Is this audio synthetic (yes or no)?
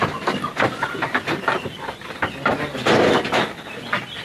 no